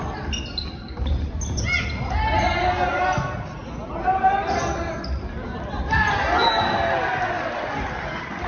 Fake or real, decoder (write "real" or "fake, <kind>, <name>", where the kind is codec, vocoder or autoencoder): real